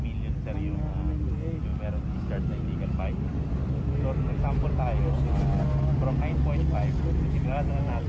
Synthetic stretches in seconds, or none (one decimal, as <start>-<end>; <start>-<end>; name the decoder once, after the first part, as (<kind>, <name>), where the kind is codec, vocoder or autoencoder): 6.8-7.3 (vocoder, BigVGAN v2)